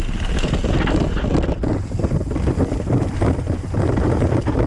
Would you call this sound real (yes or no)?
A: yes